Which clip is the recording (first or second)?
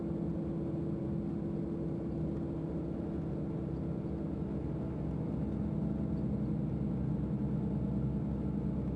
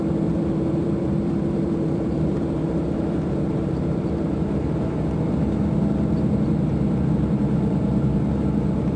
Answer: first